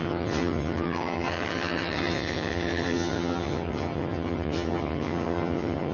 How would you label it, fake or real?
fake